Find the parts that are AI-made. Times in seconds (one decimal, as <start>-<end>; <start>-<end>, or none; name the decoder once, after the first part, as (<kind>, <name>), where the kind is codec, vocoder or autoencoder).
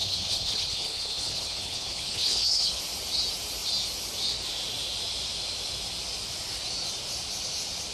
0.0-2.8 (codec, HILCodec)